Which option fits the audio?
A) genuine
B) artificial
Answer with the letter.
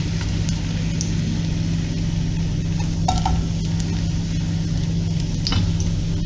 A